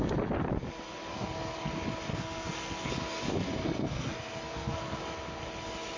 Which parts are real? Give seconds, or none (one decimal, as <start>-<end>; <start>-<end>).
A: 0.0-1.1; 1.7-2.1; 2.9-3.6; 5.0-6.0